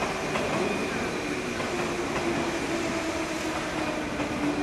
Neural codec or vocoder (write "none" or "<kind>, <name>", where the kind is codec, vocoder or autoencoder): none